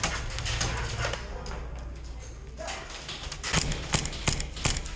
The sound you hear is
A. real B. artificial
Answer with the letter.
A